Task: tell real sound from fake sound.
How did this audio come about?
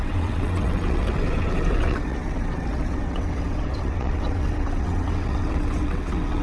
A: fake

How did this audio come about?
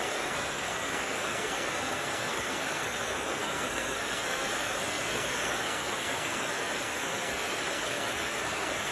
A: fake